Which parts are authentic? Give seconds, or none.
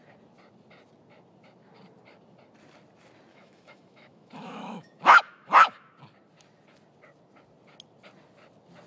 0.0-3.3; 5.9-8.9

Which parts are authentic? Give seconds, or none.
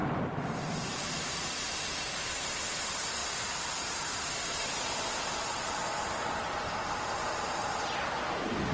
1.6-3.2; 4.5-6.4; 8.0-8.7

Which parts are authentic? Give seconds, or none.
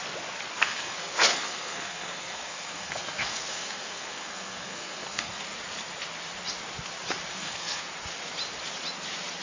0.0-0.6; 5.4-7.3; 7.8-9.4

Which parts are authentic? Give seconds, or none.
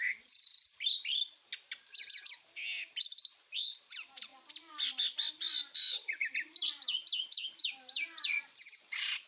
1.1-1.9; 3.0-3.7; 4.3-5.8